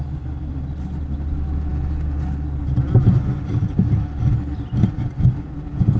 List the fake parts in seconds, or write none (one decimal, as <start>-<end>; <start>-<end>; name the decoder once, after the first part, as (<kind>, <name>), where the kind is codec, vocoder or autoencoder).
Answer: none